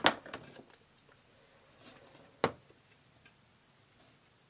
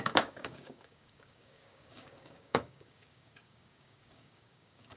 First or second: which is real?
first